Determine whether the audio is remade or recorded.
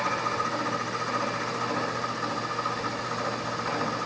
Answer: recorded